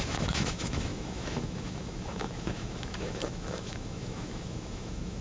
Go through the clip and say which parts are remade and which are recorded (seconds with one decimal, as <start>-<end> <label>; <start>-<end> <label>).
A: 0.0-5.2 remade